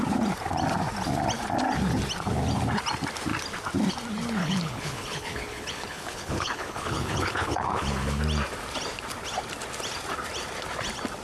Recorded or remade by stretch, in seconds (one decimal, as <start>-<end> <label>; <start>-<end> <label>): 0.0-4.4 recorded; 4.4-8.2 remade; 8.2-11.2 recorded